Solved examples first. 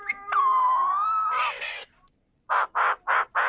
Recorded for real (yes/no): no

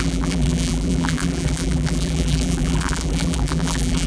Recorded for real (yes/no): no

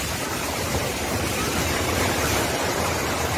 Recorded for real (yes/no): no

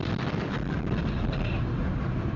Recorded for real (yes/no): no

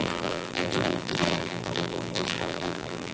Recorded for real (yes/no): no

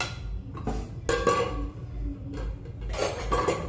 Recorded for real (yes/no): yes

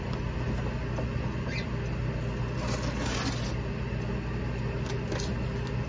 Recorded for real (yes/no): yes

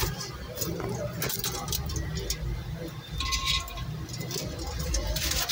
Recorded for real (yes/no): yes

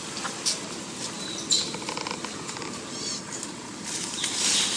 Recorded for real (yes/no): yes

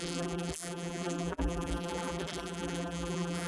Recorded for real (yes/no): no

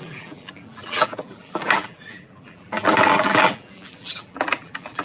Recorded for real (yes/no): no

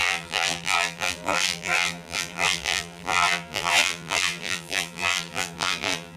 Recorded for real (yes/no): no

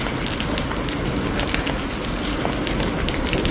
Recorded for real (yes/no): no